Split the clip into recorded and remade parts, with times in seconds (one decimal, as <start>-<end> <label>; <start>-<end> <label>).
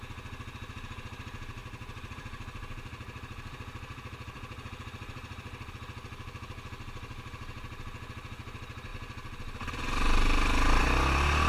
0.0-1.6 recorded; 1.6-5.7 remade; 5.7-11.5 recorded